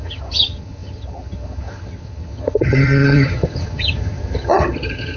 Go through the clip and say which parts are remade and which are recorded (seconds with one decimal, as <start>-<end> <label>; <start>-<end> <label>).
0.0-5.2 remade